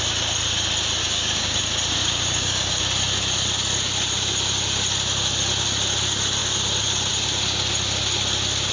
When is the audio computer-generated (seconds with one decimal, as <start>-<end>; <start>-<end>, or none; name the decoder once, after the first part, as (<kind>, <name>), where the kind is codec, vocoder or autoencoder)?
1.0-1.6 (codec, DAC); 2.0-2.8